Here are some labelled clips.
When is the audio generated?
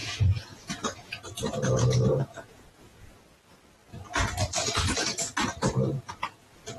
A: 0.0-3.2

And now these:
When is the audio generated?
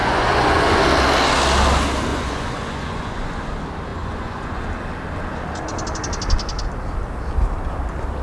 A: 0.0-0.8; 2.1-3.4; 3.9-4.6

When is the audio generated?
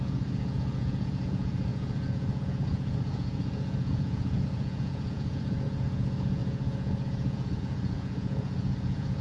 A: 0.0-9.2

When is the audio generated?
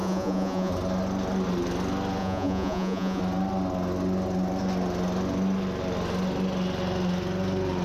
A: 0.0-0.7; 2.2-3.2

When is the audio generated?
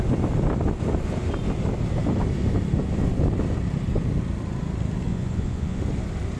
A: 5.1-5.8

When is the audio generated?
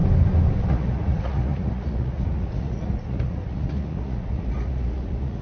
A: 0.7-5.4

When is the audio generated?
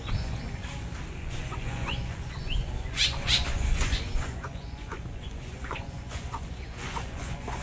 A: 0.0-0.6; 1.1-7.6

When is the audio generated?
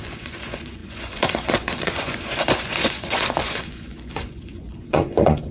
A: 0.0-5.5